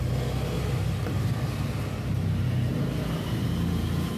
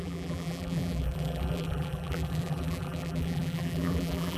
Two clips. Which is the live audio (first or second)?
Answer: first